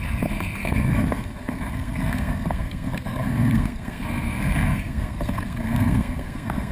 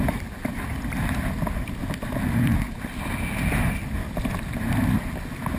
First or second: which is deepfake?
first